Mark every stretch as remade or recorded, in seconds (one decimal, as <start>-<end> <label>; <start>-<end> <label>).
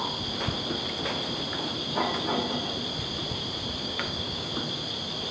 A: 0.0-3.8 recorded; 3.8-4.5 remade; 4.5-5.3 recorded